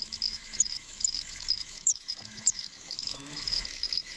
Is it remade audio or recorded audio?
remade